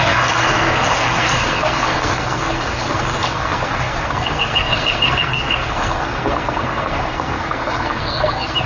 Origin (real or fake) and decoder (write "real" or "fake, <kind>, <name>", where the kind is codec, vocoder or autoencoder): fake, codec, SNAC